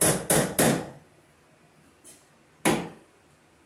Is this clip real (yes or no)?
yes